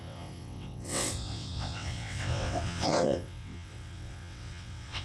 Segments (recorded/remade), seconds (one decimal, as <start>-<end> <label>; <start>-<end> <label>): 0.0-5.0 remade